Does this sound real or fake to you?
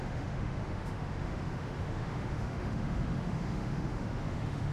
fake